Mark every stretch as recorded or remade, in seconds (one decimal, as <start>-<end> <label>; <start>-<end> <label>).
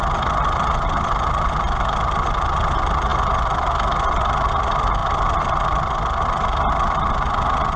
0.0-7.8 recorded